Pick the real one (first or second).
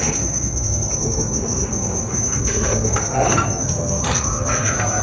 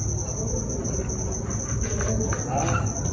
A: second